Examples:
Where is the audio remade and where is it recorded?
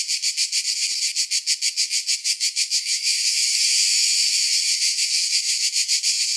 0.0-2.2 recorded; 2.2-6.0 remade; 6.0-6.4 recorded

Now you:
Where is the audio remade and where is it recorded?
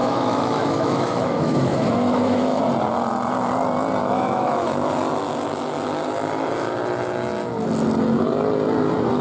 0.0-2.6 remade; 2.6-4.0 recorded; 4.0-5.0 remade; 5.0-9.2 recorded